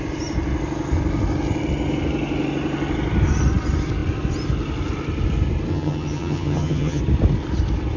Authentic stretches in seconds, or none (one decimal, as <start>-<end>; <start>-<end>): 0.0-5.7; 7.0-8.0

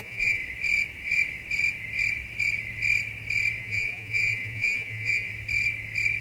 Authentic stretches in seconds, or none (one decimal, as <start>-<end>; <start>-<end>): 0.4-3.6; 5.3-6.2

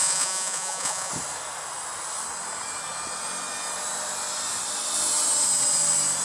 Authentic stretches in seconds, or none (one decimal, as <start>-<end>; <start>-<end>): 1.1-6.2

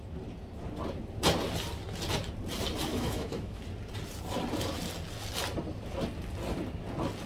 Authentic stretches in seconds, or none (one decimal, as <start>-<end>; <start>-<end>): 0.0-2.9; 3.6-7.3

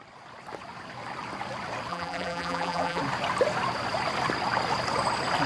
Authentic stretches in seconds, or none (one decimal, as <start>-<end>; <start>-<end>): 0.0-1.9; 3.0-5.5

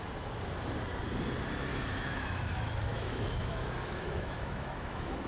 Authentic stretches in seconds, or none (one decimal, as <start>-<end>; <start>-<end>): 0.0-1.7